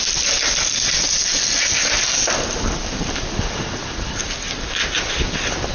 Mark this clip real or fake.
real